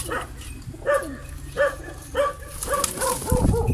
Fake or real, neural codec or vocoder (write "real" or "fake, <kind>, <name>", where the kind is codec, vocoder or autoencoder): real